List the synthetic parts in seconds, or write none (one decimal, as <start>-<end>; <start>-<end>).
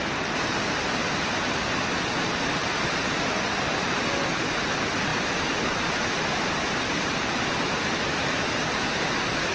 2.6-4.0; 5.1-9.5